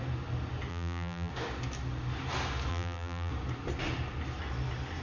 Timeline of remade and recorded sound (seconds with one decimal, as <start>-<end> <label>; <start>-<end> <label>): 0.0-0.7 recorded; 0.7-1.3 remade; 1.3-2.7 recorded; 2.7-3.3 remade; 3.3-5.0 recorded